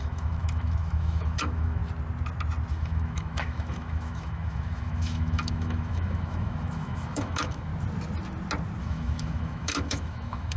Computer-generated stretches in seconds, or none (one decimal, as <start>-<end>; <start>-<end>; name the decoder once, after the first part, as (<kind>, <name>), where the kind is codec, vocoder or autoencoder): 0.0-1.8 (autoencoder, DAC-VAE); 2.7-7.7; 8.8-10.6